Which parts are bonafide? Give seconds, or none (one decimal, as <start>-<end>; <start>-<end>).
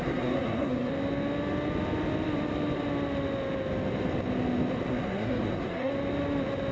0.9-4.9; 5.9-6.7